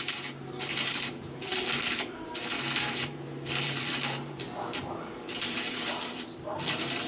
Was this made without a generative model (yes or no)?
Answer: no